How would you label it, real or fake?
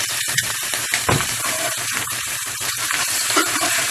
fake